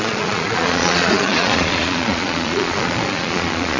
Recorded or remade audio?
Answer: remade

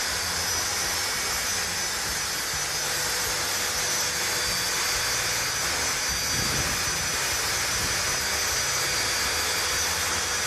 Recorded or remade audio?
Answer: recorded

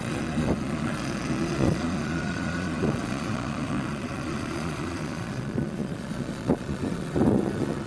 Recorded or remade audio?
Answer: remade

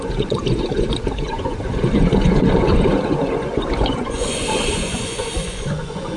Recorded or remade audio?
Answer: remade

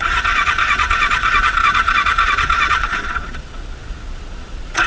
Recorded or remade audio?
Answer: remade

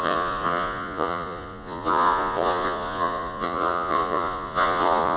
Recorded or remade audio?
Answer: remade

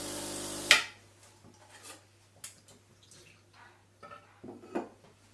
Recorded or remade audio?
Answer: recorded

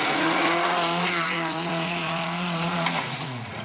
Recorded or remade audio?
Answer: remade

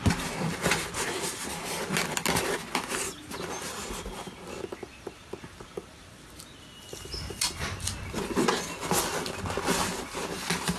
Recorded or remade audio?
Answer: recorded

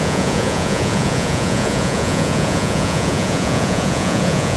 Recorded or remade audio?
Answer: remade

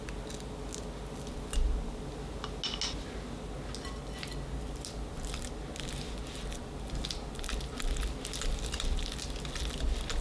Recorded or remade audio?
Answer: recorded